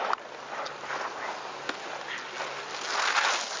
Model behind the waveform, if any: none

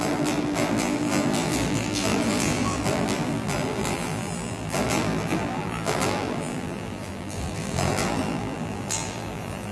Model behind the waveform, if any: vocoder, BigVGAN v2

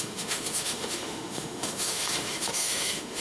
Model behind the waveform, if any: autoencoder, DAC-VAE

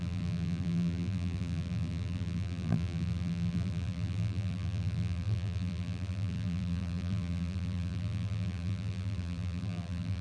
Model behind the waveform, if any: vocoder, BigVGAN v2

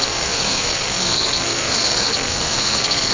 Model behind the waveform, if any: codec, SNAC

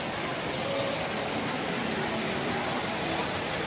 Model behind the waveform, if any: none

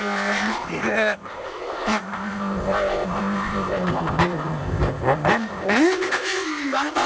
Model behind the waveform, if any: codec, ZipCodec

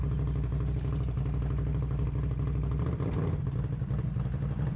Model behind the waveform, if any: none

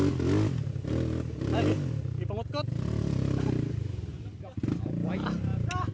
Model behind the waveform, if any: none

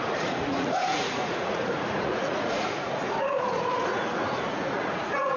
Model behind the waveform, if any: vocoder, Vocos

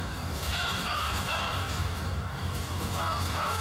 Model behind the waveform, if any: codec, DAC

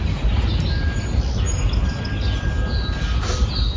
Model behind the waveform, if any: none